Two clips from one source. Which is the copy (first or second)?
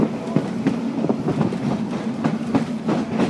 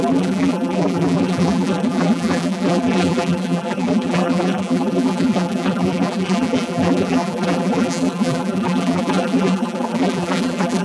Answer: second